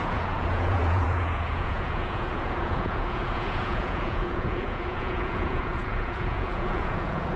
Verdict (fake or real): fake